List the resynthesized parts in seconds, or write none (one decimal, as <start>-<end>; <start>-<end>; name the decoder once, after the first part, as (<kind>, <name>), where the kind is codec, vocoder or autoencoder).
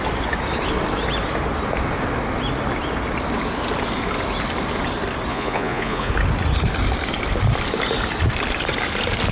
5.3-6.1 (vocoder, Vocos)